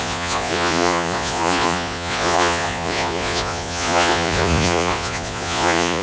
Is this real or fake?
fake